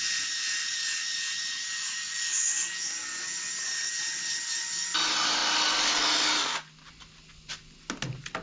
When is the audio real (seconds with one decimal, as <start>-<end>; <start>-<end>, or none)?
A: 0.0-8.4